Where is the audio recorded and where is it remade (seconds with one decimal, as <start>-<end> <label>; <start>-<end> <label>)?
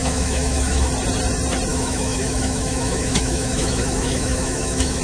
0.0-0.9 remade; 0.9-1.7 recorded; 1.7-5.0 remade